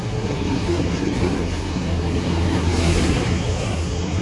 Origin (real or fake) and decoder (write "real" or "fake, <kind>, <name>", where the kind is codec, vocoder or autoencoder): fake, codec, SNAC